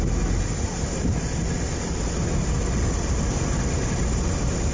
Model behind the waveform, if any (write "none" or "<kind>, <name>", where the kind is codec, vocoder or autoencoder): none